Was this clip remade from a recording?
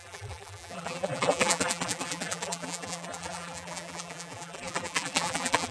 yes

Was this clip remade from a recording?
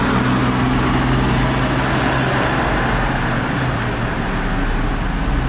no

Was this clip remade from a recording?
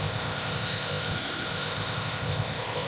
yes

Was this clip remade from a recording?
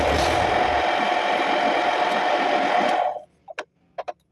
no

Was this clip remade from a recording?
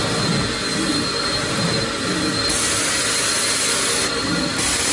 no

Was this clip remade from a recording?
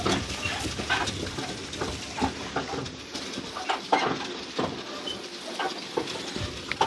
no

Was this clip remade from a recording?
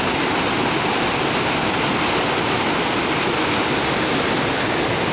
no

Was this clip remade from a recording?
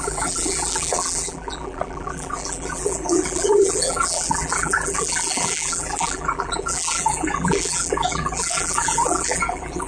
yes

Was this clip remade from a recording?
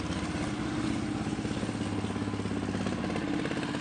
no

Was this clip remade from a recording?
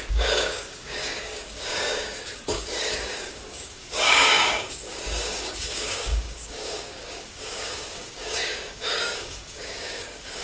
yes